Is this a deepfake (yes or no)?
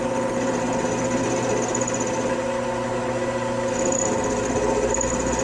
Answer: no